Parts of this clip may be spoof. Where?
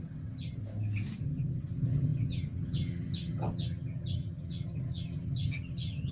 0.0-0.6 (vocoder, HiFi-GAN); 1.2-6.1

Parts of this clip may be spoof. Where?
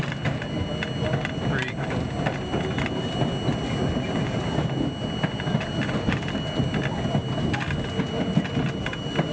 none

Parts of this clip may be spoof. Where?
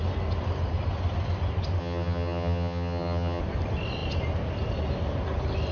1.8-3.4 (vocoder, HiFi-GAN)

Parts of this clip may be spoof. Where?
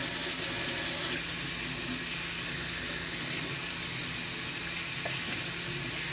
none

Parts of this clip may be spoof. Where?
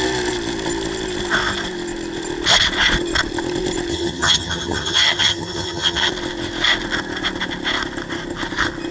3.9-6.1 (vocoder, HiFi-GAN)